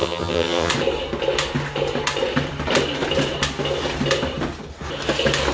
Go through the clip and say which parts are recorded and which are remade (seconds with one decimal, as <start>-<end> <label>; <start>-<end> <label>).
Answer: 0.0-0.7 remade; 0.7-5.5 recorded